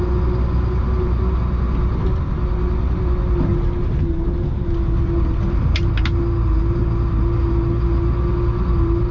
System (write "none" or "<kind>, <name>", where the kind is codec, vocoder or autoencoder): none